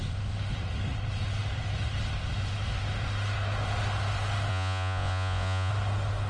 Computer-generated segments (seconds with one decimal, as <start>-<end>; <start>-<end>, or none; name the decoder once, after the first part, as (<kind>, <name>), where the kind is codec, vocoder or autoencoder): 4.5-5.7 (vocoder, Vocos)